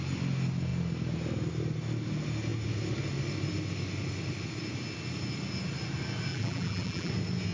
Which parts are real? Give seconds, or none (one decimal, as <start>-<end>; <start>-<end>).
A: 0.0-6.3; 7.1-7.5